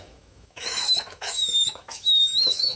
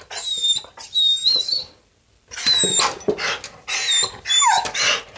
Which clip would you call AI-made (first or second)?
first